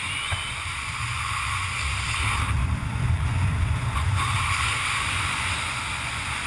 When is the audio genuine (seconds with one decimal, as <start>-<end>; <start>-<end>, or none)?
1.8-2.6